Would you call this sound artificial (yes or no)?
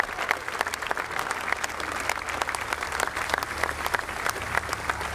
no